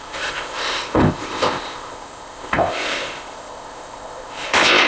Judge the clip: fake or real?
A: fake